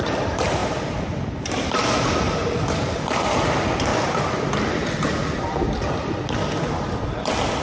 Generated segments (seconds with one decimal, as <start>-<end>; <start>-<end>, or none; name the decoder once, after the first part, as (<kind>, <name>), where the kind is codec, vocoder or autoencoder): 0.6-1.4 (vocoder, BigVGAN v2); 3.9-4.5